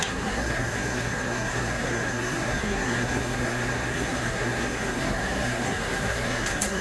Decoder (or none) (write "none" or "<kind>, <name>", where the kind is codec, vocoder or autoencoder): codec, SNAC